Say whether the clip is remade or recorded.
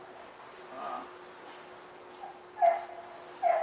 recorded